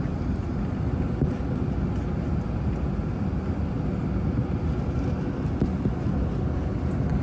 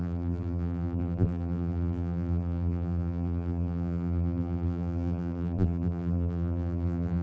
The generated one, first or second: second